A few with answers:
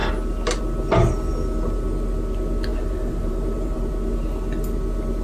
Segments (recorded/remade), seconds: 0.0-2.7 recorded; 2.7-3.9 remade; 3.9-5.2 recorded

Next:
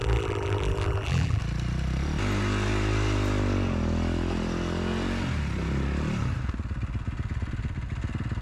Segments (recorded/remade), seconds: 0.0-1.4 remade; 1.4-8.4 recorded

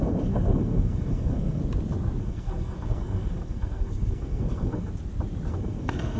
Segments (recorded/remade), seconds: 0.0-1.6 remade; 1.6-2.2 recorded; 2.2-4.9 remade; 4.9-5.5 recorded; 5.5-6.2 remade

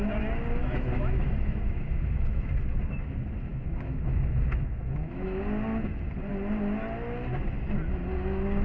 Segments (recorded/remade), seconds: 0.0-0.6 recorded; 0.6-2.5 remade; 2.5-3.5 recorded; 3.5-5.4 remade; 5.4-8.6 recorded

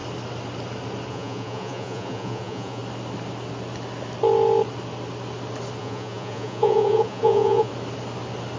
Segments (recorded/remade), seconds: 0.0-1.1 recorded; 1.1-2.8 remade; 2.8-5.8 recorded; 5.8-7.7 remade; 7.7-8.6 recorded

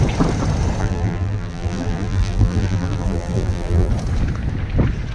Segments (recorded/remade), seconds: 0.0-0.8 recorded; 0.8-3.9 remade; 3.9-5.1 recorded

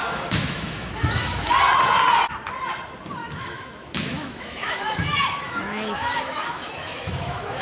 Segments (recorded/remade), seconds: 0.0-1.5 remade; 1.5-3.2 recorded; 3.2-7.6 remade